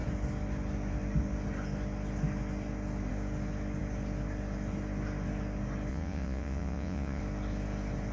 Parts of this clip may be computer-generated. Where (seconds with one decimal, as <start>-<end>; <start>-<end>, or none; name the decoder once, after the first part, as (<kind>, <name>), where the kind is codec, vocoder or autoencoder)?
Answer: 5.9-7.2 (vocoder, Vocos)